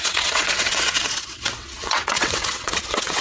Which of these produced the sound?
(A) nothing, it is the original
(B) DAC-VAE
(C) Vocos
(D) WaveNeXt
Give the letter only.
D